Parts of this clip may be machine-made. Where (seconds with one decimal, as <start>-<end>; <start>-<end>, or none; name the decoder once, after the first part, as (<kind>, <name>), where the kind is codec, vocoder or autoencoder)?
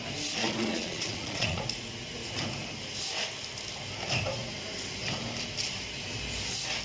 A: 0.4-1.6 (vocoder, Vocos)